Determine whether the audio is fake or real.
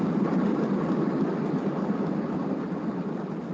real